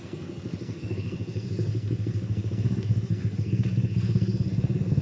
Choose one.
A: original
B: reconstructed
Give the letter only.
B